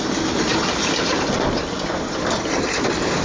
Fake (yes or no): no